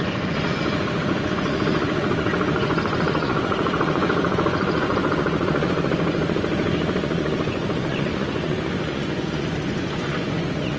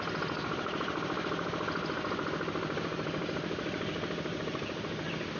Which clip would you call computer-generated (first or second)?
first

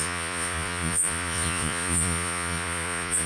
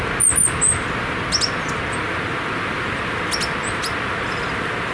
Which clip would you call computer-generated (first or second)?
first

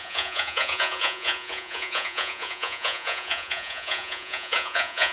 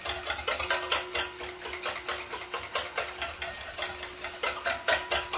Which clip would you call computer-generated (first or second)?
first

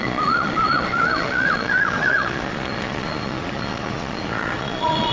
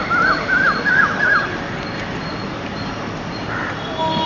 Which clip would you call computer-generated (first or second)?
first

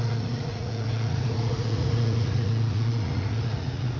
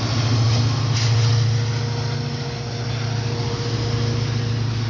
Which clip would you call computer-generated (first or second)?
first